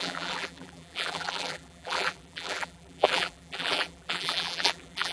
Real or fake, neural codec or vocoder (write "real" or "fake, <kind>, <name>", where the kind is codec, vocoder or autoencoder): fake, vocoder, BigVGAN v2